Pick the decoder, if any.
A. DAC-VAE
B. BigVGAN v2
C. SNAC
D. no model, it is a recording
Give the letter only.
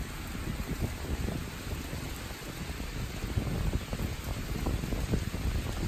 D